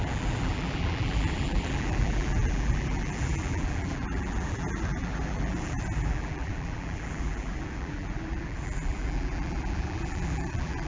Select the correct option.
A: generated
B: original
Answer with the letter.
A